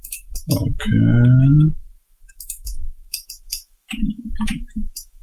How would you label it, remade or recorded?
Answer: remade